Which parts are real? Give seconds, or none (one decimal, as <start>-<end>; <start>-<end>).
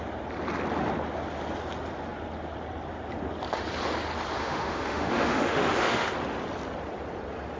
0.0-4.4; 6.1-7.6